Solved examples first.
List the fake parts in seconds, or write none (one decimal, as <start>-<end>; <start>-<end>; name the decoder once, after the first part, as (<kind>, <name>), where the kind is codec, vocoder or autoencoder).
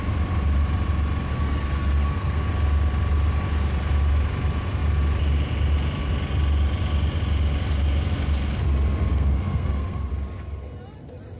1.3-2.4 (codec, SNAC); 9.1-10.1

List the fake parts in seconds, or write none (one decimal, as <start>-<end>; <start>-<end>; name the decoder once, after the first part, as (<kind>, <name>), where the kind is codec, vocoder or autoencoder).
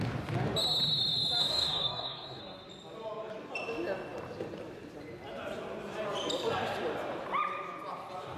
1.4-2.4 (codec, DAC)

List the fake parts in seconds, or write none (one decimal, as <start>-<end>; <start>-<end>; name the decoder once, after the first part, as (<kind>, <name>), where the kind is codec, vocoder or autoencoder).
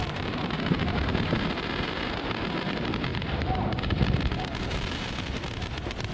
0.0-6.1 (vocoder, BigVGAN v2)